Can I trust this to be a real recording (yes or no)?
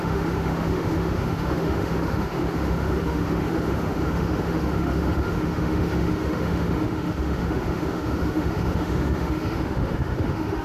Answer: no